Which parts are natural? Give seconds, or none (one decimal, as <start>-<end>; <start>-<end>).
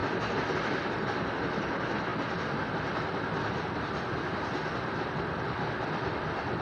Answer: 0.0-6.6